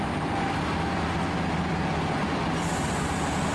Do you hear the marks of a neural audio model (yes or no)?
no